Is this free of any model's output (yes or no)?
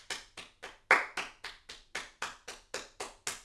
yes